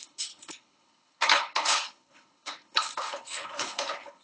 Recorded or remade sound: remade